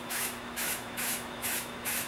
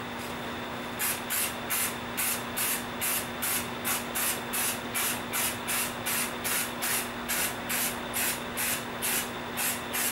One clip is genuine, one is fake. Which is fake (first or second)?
first